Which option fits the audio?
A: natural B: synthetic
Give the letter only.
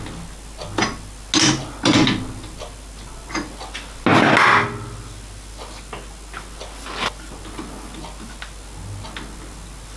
A